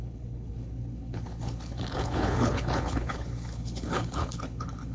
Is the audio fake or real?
fake